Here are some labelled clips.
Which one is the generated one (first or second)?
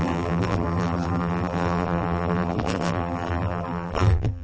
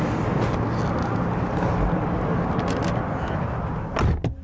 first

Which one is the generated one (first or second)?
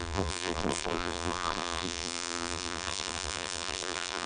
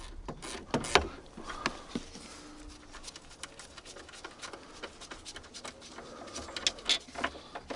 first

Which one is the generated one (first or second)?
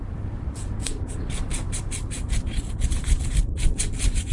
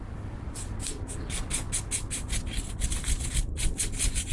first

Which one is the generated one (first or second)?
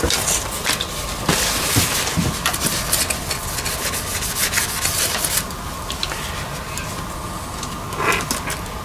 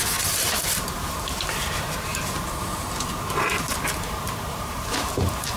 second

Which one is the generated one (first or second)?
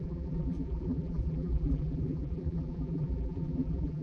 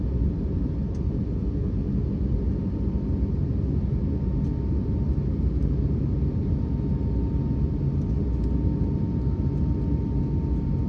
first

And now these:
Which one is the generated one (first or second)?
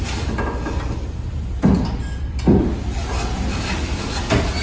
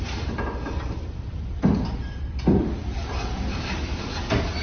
second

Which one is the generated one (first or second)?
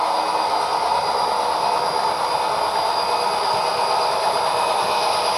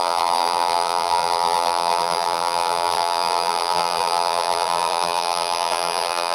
second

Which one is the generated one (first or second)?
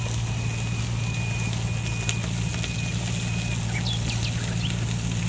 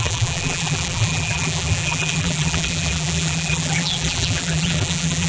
second